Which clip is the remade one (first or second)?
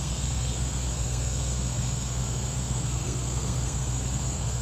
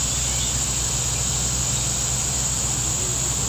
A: first